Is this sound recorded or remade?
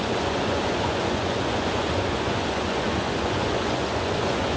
remade